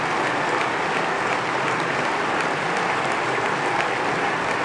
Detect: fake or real real